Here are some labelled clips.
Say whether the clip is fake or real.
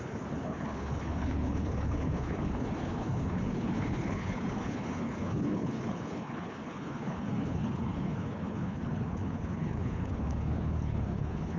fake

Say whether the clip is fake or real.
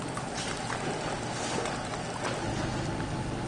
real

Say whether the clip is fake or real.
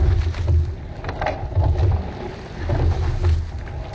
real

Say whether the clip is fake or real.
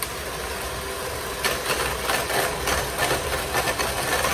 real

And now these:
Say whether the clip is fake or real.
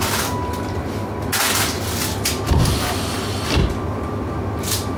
real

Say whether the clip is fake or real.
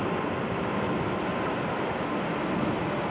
real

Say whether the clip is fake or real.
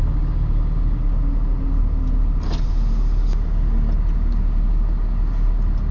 real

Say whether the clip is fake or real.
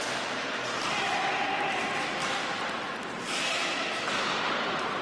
real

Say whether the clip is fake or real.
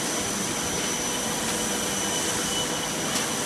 real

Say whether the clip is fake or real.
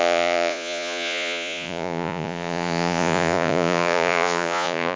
fake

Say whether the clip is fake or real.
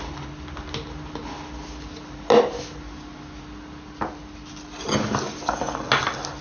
real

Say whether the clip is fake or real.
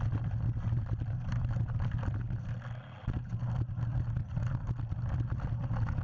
real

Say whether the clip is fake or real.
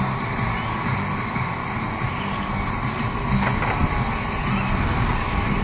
real